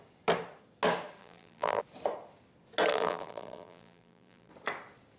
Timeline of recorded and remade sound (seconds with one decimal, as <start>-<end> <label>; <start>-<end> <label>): 0.0-1.2 recorded; 1.2-1.8 remade; 1.8-2.9 recorded; 2.9-4.5 remade; 4.5-5.2 recorded